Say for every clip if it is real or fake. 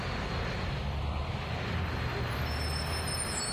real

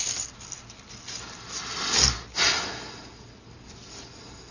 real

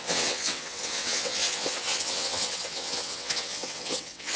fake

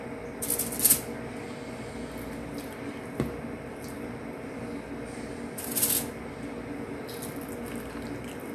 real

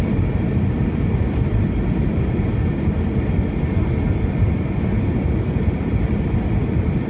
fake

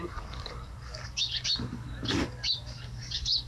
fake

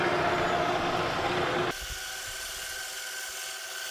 real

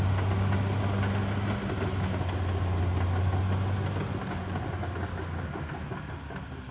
real